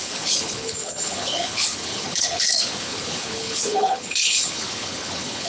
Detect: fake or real fake